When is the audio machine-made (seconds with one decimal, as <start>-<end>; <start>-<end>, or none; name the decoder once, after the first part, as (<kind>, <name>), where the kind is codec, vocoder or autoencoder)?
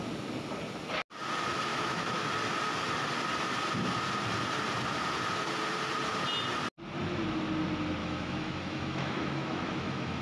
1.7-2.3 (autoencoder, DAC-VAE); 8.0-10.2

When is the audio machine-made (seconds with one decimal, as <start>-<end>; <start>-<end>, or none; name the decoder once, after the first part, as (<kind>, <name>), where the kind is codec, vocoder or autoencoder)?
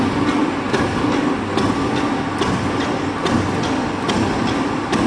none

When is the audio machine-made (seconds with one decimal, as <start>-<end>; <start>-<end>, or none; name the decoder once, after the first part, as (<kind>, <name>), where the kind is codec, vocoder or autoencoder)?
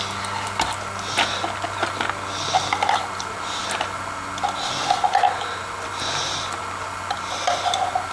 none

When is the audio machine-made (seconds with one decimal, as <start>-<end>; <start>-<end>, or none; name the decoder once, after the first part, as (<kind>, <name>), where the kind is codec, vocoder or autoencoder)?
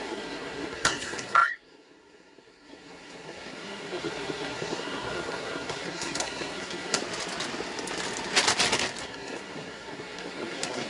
0.0-7.0 (codec, SNAC); 9.0-10.9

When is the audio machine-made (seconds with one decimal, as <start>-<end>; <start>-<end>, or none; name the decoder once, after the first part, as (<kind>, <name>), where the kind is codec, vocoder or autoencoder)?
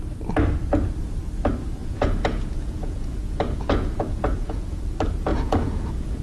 1.8-4.8 (vocoder, Vocos); 5.3-6.2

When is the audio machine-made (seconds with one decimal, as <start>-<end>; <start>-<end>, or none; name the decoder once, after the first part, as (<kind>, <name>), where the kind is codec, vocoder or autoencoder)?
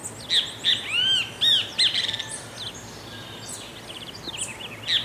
none